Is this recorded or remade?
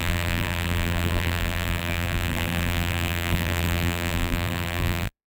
remade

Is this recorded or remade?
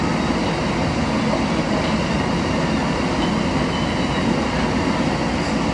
recorded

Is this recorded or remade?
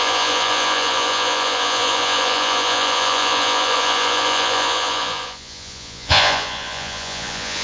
remade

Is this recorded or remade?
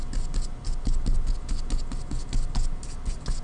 recorded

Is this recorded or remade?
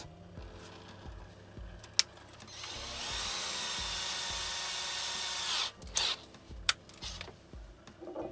recorded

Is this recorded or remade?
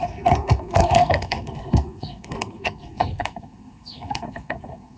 remade